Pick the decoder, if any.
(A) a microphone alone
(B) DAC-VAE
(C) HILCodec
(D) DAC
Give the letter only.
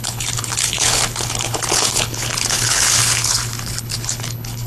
C